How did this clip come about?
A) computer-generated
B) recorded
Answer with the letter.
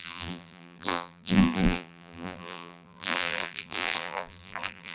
A